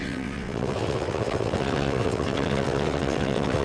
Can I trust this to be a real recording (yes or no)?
no